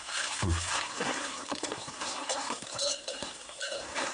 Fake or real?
fake